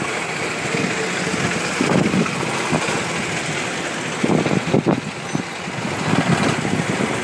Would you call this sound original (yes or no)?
yes